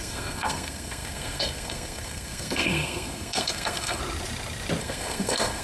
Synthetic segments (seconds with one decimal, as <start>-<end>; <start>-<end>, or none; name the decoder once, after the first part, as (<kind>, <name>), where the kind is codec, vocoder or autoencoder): 0.0-4.0 (codec, SNAC); 4.8-5.6